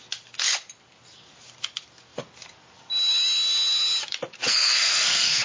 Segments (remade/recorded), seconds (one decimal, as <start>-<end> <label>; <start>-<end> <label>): 0.0-4.4 recorded; 4.4-5.4 remade